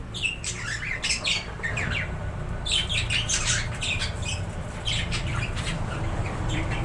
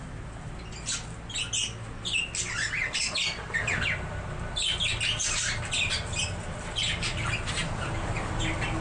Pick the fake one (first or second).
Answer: first